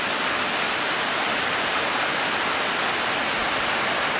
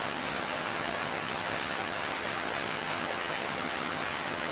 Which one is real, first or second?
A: first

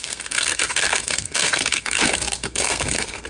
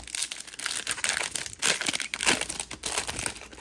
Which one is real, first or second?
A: second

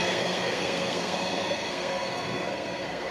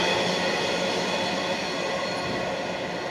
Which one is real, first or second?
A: second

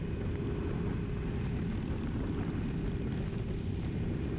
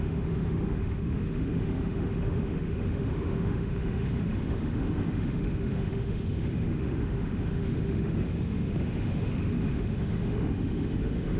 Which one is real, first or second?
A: first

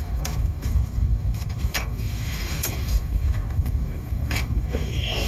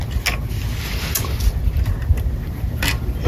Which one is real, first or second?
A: second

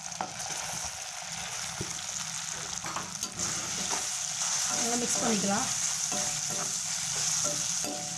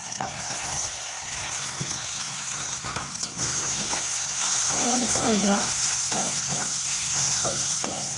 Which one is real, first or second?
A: first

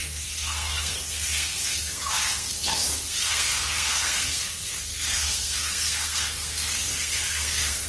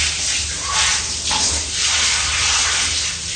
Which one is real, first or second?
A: second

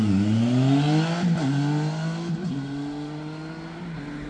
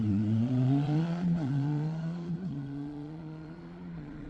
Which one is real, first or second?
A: first